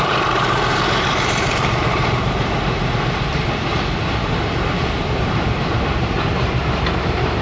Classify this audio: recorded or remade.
remade